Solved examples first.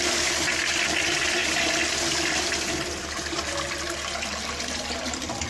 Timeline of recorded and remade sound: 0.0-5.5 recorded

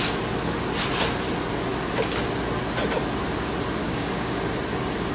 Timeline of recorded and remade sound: 0.0-3.8 recorded; 3.8-4.4 remade; 4.4-5.1 recorded

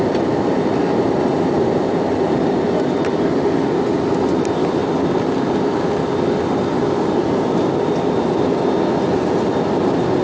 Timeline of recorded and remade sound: 0.0-10.2 recorded

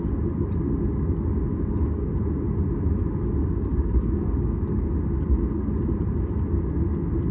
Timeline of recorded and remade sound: 0.0-1.5 recorded; 1.5-2.1 remade; 2.1-3.4 recorded; 3.4-4.9 remade; 4.9-7.3 recorded

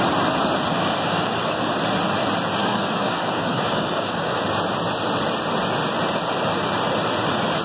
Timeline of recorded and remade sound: 0.0-0.7 recorded; 0.7-1.7 remade; 1.7-2.6 recorded; 2.6-4.4 remade; 4.4-7.6 recorded

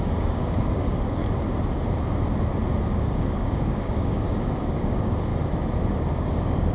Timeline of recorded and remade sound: 0.0-1.2 remade; 1.2-3.0 recorded; 3.0-5.3 remade; 5.3-6.1 recorded; 6.1-6.7 remade